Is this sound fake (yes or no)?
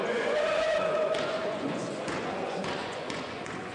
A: yes